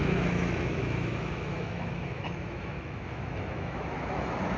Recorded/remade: remade